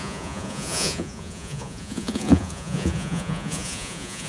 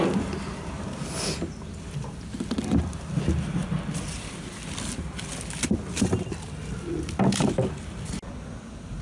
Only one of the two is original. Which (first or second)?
second